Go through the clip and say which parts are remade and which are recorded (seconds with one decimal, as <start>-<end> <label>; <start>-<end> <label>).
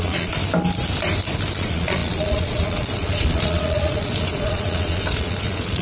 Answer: 0.0-0.4 remade; 0.4-1.5 recorded; 1.5-5.8 remade